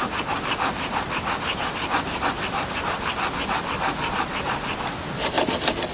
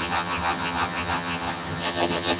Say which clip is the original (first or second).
first